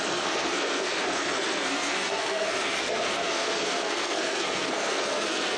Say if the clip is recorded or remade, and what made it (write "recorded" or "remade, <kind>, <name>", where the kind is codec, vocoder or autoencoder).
remade, codec, SNAC